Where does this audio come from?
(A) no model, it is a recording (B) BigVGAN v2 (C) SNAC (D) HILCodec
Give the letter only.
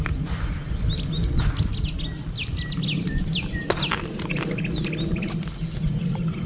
A